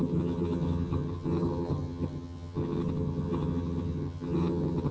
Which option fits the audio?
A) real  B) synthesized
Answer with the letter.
B